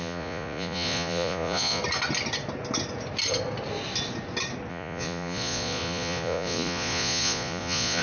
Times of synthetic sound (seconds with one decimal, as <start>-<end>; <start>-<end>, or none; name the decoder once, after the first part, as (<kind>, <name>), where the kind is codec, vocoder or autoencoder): 0.0-1.8 (vocoder, Vocos); 4.7-8.0